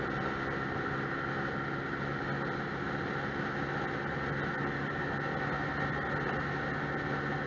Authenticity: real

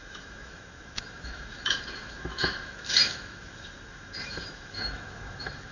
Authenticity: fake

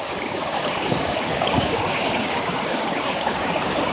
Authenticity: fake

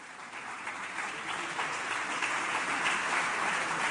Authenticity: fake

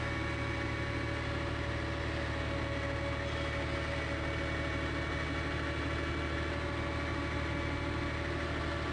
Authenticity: real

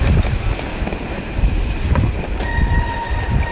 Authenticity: real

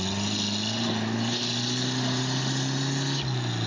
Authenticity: real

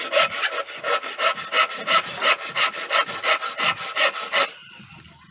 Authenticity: real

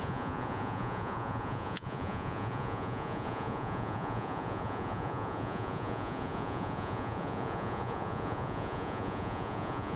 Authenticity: fake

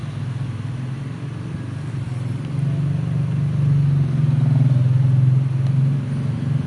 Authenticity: real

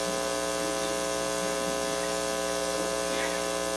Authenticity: real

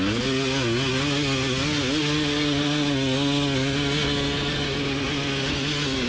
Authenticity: real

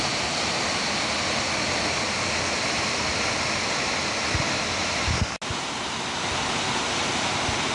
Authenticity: real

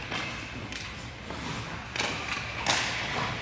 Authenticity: real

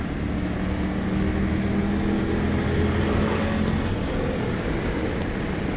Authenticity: real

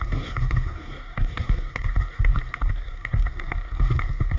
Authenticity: fake